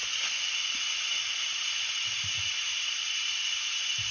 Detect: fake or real real